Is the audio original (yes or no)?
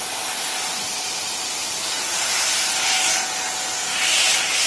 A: yes